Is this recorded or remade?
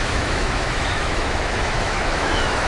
remade